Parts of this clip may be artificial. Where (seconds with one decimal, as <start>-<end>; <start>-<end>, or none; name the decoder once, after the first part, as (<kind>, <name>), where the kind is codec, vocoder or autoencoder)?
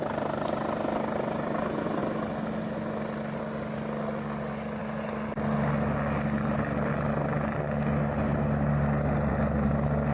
none